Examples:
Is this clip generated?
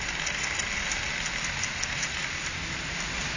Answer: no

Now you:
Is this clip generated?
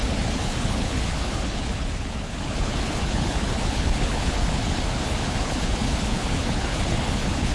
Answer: yes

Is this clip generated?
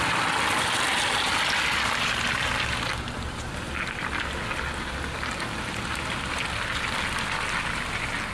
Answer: no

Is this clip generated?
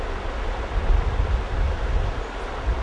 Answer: no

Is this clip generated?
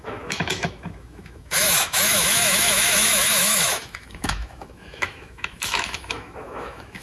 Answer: yes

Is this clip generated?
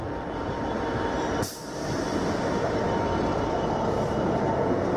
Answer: yes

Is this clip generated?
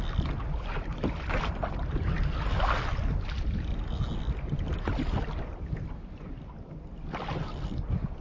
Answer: no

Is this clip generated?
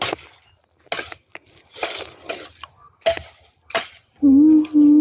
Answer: no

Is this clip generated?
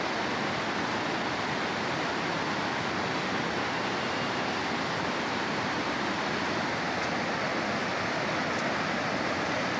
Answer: no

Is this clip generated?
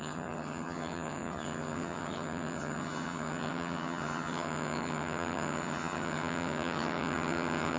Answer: yes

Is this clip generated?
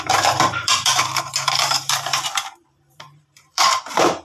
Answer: yes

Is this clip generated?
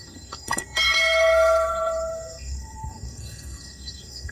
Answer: yes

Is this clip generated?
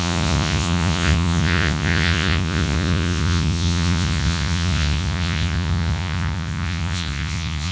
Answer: yes